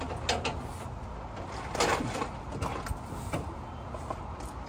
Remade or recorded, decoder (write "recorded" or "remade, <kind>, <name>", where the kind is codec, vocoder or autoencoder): recorded